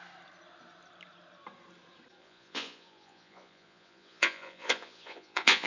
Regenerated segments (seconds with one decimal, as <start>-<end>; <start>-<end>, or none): 2.2-5.7